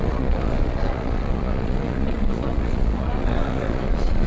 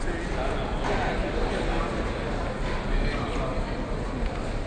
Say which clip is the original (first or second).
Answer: second